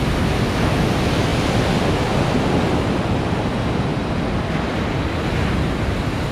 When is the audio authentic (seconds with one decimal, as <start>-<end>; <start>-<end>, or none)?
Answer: 0.0-6.3